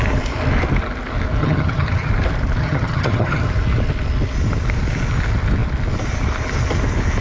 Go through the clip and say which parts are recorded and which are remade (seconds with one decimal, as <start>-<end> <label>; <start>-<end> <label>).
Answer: 0.0-1.4 recorded; 1.4-2.1 remade; 2.1-2.6 recorded; 2.6-3.5 remade; 3.5-7.2 recorded